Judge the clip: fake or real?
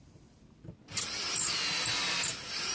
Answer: real